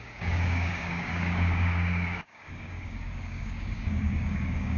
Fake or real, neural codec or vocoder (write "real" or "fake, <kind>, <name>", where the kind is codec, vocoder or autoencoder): fake, codec, DAC